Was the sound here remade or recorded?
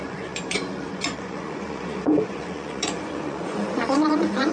remade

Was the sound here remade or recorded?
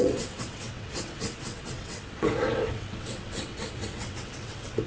remade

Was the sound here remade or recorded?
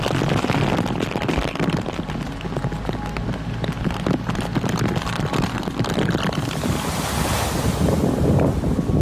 recorded